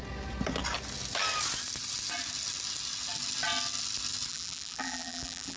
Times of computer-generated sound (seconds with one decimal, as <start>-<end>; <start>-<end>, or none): 4.3-5.6